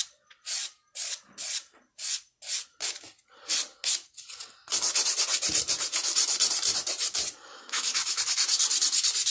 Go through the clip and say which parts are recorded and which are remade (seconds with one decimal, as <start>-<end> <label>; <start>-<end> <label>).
0.0-7.5 recorded; 7.5-8.2 remade; 8.2-9.3 recorded